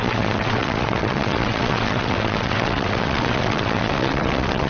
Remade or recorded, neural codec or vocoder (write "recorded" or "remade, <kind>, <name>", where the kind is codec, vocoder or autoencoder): remade, vocoder, WaveNeXt